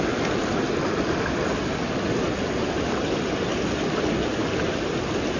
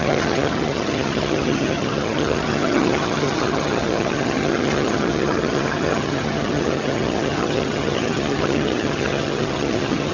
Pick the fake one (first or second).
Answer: second